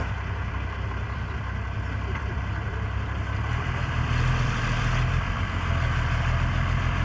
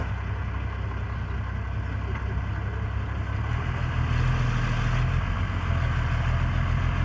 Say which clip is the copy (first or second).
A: first